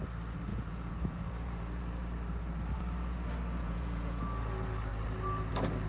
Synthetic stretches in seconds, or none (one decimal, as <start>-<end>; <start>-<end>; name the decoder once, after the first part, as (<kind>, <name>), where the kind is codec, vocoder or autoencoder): 0.5-1.8 (vocoder, Vocos); 3.6-4.2